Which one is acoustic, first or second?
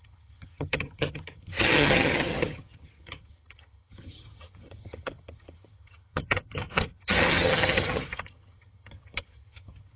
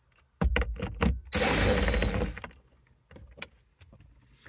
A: second